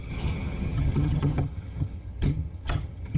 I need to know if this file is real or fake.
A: fake